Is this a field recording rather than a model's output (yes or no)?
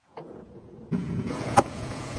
no